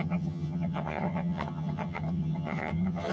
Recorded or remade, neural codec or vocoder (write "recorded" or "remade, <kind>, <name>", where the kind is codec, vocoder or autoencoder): remade, vocoder, HiFi-GAN